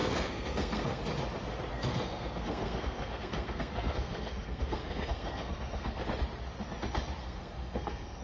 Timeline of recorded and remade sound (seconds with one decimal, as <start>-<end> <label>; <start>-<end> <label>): 0.0-1.0 remade; 1.0-1.7 recorded; 1.7-6.0 remade; 6.0-7.2 recorded; 7.2-8.2 remade